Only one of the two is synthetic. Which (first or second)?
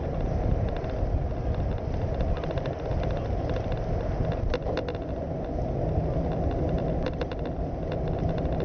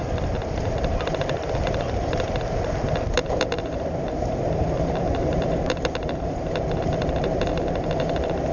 second